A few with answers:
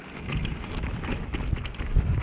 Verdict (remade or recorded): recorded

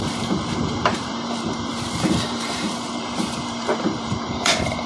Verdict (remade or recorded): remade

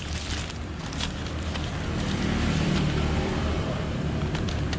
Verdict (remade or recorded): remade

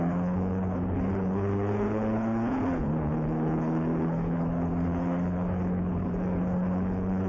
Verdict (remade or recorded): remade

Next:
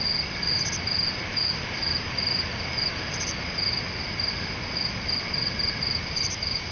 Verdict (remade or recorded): recorded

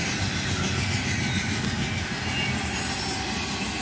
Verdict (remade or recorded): recorded